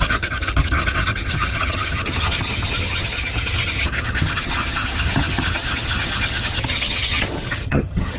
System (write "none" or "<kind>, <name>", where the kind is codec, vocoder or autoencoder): vocoder, HiFi-GAN